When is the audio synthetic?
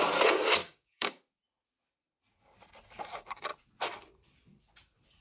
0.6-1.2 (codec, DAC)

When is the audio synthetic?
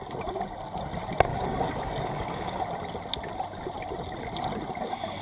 1.3-2.6 (codec, DAC)